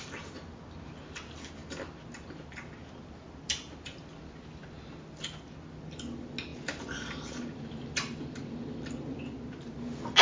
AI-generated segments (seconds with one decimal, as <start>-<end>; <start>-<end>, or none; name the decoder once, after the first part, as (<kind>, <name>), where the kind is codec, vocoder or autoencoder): none